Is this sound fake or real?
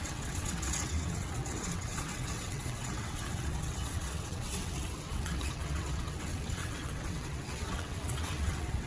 fake